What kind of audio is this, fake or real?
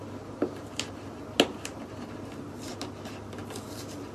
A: real